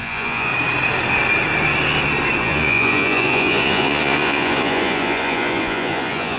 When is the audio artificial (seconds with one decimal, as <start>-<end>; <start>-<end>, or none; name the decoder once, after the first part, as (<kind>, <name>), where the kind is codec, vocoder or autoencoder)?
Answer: 0.0-0.5 (vocoder, Vocos); 2.4-6.4